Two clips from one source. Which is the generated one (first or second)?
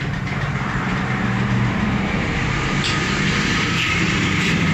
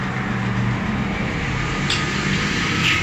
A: first